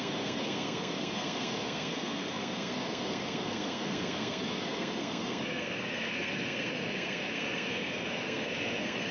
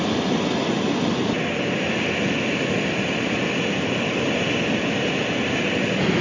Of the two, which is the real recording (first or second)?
second